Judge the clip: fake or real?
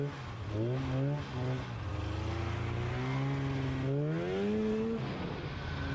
real